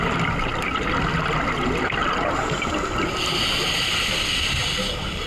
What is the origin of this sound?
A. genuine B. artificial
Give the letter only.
A